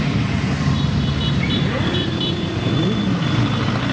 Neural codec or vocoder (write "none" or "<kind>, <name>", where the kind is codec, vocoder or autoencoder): vocoder, BigVGAN v2